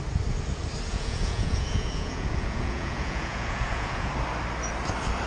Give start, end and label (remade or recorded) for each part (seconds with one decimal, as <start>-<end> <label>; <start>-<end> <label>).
0.0-0.9 recorded; 0.9-4.1 remade; 4.1-5.3 recorded